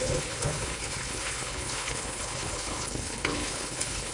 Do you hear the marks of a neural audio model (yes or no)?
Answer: yes